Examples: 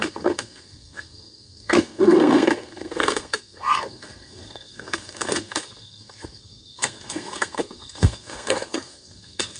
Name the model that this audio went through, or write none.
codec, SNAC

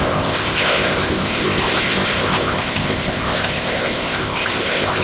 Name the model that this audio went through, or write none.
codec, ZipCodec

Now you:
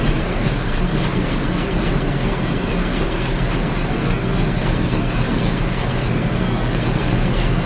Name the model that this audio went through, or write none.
codec, SNAC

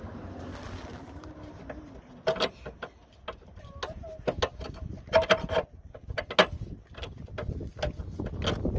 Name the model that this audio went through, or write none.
none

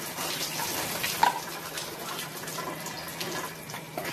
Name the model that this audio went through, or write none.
none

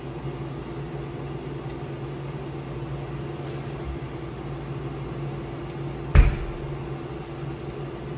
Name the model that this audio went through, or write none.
none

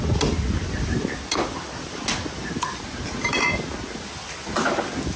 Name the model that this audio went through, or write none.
none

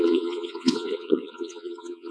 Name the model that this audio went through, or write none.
vocoder, Vocos